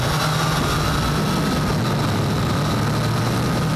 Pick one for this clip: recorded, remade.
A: recorded